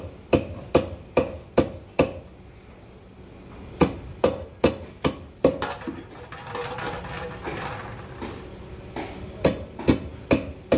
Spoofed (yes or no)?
no